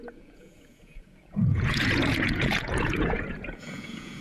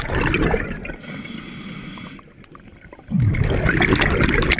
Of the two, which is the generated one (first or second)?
first